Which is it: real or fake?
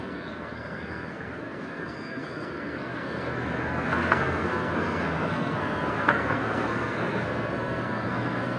fake